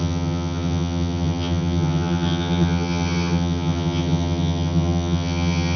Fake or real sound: fake